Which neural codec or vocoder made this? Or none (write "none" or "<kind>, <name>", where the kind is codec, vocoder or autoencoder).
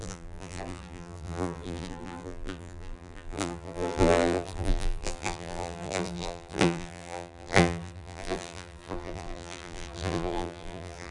vocoder, BigVGAN v2